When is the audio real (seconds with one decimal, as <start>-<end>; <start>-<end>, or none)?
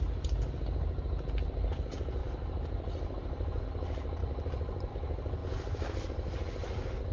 0.0-2.2; 3.6-4.2; 4.9-7.1